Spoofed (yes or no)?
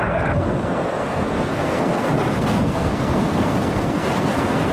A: yes